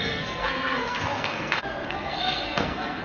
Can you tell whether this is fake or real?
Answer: fake